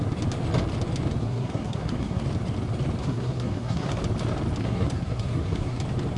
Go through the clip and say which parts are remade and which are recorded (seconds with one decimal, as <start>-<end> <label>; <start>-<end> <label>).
0.0-1.2 recorded; 1.2-2.2 remade; 2.2-3.0 recorded; 3.0-4.0 remade; 4.0-4.6 recorded; 4.6-5.8 remade; 5.8-6.2 recorded